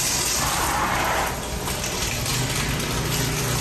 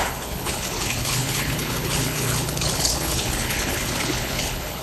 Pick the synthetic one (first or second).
second